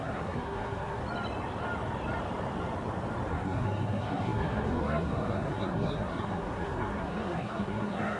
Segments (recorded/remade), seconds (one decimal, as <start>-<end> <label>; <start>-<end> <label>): 0.0-1.0 remade; 1.0-3.3 recorded; 3.3-8.2 remade